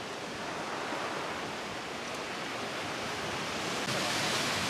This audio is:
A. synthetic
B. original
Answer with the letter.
B